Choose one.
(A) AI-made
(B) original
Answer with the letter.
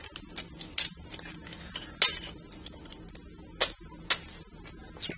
B